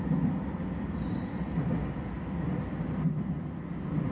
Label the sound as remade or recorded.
recorded